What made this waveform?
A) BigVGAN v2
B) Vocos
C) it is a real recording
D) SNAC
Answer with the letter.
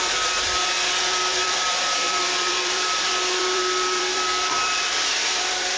A